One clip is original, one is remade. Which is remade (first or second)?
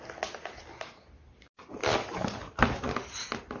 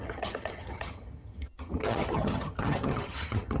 second